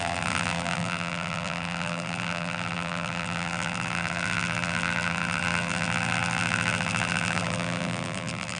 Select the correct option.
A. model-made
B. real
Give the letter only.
A